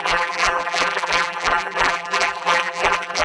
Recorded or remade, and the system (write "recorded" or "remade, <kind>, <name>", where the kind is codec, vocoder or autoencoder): remade, vocoder, BigVGAN v2